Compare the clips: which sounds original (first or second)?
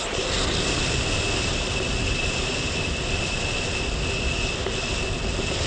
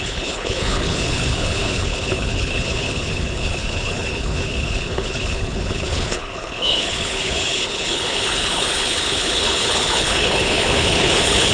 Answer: first